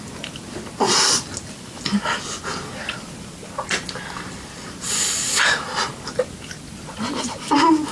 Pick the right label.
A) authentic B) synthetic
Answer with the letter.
A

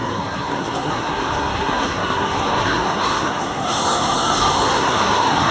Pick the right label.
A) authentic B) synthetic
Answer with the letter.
B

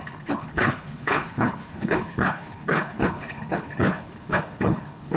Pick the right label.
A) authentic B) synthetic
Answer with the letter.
B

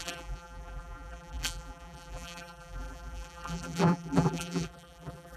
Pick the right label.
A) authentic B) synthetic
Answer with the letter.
B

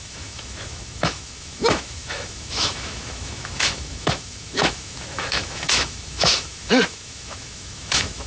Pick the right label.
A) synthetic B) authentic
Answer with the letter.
A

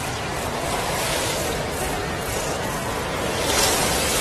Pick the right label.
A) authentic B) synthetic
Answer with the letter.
A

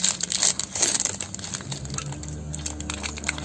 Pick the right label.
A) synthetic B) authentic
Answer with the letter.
B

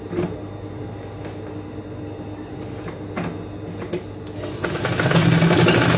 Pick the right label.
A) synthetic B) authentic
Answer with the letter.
B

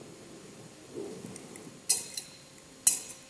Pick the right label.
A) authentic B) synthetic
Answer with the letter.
A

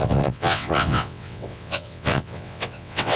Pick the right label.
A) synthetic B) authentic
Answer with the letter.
A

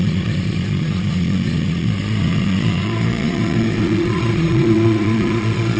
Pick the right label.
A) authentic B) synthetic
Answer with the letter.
B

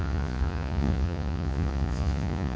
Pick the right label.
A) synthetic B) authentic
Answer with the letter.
A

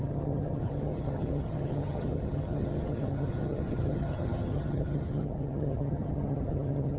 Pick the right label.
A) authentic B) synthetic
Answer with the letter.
B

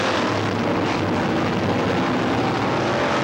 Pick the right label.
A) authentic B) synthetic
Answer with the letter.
A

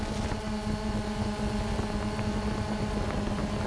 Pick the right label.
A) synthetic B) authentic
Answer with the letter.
B